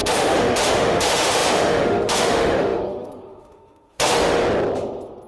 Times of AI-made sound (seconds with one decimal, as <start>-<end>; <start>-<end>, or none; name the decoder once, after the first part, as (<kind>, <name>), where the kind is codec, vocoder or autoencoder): 0.0-4.4 (autoencoder, DAC-VAE)